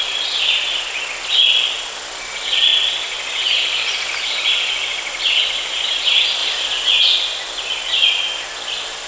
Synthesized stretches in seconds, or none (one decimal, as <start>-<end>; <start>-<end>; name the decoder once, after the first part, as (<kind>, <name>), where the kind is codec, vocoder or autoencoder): none